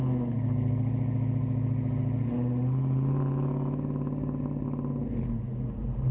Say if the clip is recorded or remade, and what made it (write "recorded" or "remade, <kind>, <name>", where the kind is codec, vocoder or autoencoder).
recorded